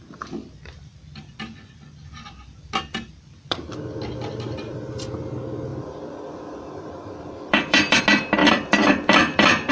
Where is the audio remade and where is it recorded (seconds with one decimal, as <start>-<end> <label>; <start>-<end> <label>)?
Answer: 0.0-5.7 recorded; 5.7-8.0 remade; 8.0-8.4 recorded; 8.4-9.7 remade